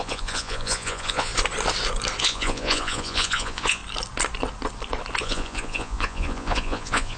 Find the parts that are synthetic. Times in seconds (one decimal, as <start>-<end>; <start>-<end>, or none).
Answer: 0.0-1.3; 2.2-3.8; 5.2-7.2